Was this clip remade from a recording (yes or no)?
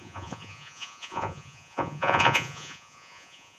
yes